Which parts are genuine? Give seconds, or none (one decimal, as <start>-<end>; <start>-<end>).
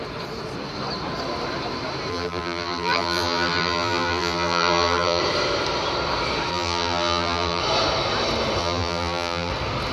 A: 0.0-2.1; 5.2-6.5; 7.6-8.6; 9.5-9.9